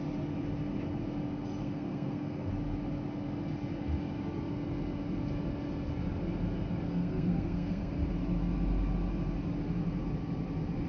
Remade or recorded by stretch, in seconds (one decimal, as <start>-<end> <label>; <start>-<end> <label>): 0.0-1.6 recorded; 1.6-2.5 remade; 2.5-6.9 recorded; 6.9-7.9 remade; 7.9-10.9 recorded